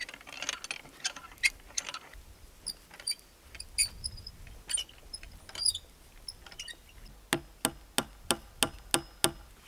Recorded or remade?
recorded